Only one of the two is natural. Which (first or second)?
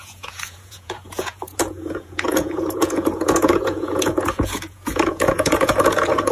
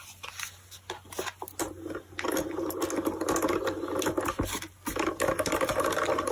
second